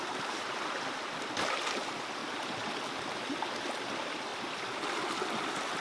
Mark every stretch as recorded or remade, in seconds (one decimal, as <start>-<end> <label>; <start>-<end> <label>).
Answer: 0.0-2.2 remade; 2.2-3.8 recorded; 3.8-5.8 remade